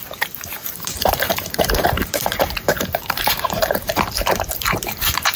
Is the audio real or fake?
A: fake